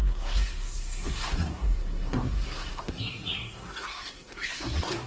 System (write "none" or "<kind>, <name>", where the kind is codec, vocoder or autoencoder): codec, SNAC